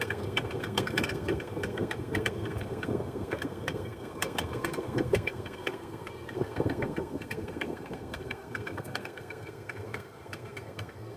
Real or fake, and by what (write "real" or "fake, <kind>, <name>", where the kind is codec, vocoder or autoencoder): fake, codec, SNAC